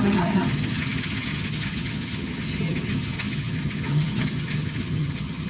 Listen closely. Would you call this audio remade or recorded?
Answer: remade